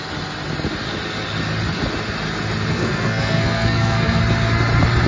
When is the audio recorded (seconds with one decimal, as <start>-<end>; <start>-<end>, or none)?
0.0-2.7; 4.2-5.1